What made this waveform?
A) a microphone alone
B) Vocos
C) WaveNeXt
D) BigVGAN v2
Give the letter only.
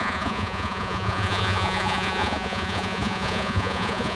B